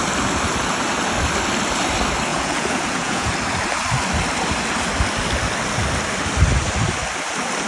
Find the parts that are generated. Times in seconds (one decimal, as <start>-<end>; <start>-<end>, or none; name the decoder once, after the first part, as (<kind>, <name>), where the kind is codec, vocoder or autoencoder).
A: 2.3-3.3 (vocoder, Vocos)